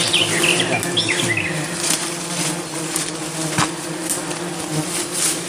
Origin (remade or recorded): remade